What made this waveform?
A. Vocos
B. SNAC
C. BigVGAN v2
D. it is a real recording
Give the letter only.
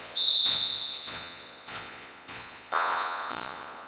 A